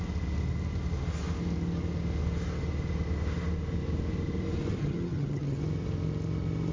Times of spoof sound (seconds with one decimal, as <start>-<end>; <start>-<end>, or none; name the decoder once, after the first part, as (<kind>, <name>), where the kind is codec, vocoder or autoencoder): 4.8-5.6 (vocoder, HiFi-GAN)